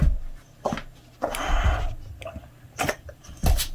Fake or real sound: real